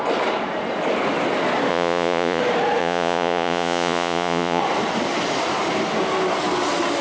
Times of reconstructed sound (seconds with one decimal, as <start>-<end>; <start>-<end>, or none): 1.7-2.4; 2.8-4.6